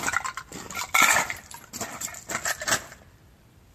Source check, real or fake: fake